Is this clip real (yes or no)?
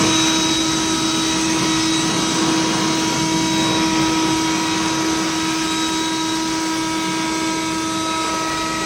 yes